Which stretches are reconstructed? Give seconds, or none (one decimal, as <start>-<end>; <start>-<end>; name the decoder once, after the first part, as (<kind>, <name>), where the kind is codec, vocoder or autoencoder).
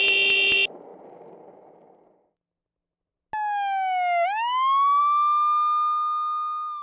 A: none